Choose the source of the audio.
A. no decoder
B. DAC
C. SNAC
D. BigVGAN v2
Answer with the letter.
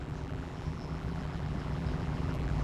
D